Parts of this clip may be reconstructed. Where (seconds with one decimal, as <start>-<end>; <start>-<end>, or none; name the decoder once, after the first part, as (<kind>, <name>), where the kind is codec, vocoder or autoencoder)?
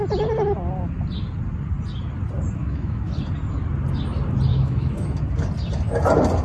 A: 2.6-3.1 (autoencoder, DAC-VAE); 4.5-5.2